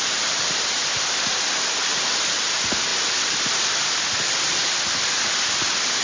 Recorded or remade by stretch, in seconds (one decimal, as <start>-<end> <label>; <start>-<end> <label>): 0.0-6.0 recorded